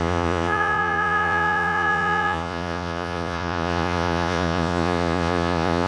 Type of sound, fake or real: fake